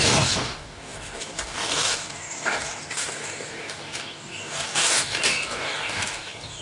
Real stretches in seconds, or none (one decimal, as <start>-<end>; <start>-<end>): none